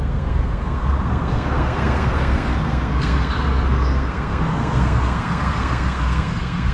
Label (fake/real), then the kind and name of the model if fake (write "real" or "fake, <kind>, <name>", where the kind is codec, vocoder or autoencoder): fake, codec, SNAC